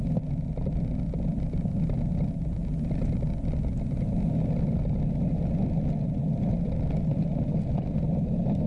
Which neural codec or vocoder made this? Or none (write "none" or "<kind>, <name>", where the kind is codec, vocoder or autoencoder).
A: none